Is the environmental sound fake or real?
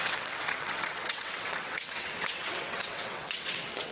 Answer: fake